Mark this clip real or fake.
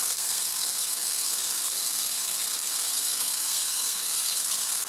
fake